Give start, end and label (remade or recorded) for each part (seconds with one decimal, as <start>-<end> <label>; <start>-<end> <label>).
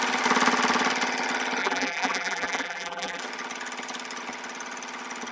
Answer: 0.0-1.6 recorded; 1.6-3.2 remade; 3.2-5.3 recorded